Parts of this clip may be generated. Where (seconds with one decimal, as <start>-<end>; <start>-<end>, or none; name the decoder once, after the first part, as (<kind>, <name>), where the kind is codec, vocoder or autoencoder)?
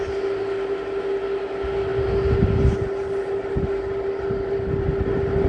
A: none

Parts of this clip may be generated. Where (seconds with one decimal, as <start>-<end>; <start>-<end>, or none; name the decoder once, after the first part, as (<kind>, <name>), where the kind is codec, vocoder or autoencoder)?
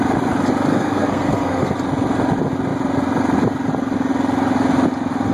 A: 0.7-1.7 (codec, SNAC)